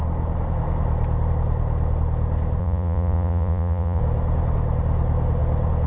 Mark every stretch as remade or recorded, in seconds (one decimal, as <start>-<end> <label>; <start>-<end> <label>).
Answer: 0.0-2.6 recorded; 2.6-4.0 remade; 4.0-5.9 recorded

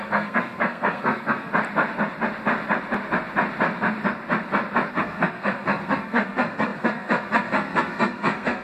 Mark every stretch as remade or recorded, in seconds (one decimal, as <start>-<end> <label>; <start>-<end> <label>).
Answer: 0.0-1.5 remade; 1.5-4.9 recorded; 4.9-8.6 remade

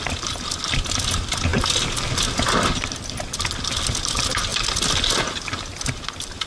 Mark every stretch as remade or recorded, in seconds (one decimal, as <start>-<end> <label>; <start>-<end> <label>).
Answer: 0.0-6.5 recorded

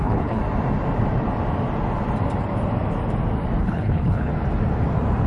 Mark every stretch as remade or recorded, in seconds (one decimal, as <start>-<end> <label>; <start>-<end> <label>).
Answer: 0.0-0.4 remade; 0.4-3.6 recorded; 3.6-4.3 remade; 4.3-5.3 recorded

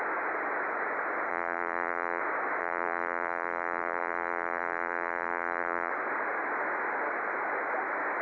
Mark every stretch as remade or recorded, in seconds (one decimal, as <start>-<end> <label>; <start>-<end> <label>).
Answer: 0.0-1.3 recorded; 1.3-2.2 remade; 2.2-2.6 recorded; 2.6-5.9 remade; 5.9-8.2 recorded

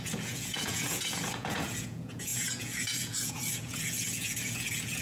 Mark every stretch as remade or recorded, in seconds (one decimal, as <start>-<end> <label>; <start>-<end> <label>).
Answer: 0.0-5.0 remade

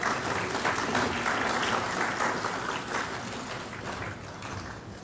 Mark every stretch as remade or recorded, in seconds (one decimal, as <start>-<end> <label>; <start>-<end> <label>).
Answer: 0.0-5.0 recorded

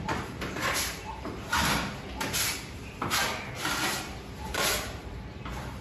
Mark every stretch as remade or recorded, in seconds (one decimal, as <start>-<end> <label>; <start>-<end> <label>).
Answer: 0.0-3.2 remade; 3.2-4.0 recorded; 4.0-5.8 remade